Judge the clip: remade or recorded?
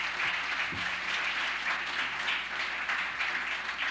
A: recorded